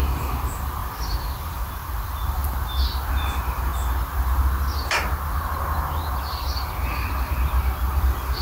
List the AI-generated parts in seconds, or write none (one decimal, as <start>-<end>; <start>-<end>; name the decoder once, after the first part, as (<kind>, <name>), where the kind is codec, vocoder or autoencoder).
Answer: 0.0-2.4 (vocoder, BigVGAN v2); 3.1-3.7; 8.0-8.4